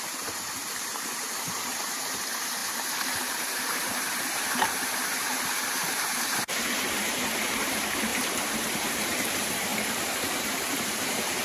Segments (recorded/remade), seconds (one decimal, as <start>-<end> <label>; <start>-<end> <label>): 0.0-9.7 remade; 9.7-10.4 recorded; 10.4-11.4 remade